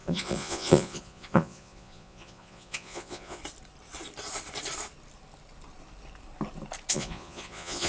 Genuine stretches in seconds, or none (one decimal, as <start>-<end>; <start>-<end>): 3.4-6.9